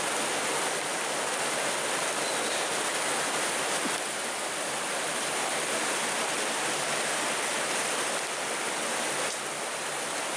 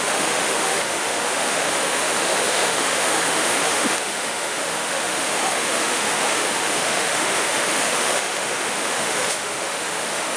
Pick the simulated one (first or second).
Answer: second